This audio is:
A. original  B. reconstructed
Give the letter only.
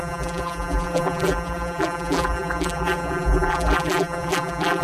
B